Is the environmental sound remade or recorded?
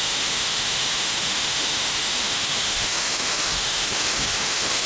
remade